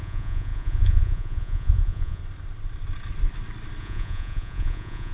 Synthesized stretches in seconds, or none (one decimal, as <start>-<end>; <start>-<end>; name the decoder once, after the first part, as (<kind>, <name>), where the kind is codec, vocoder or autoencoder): 0.0-2.2 (vocoder, Vocos); 3.8-5.1